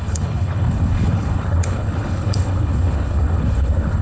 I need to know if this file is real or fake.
fake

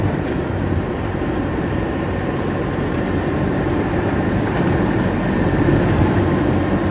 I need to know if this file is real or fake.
fake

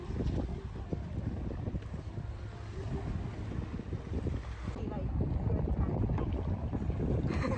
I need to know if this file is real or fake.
real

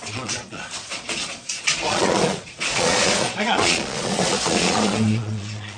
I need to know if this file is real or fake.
fake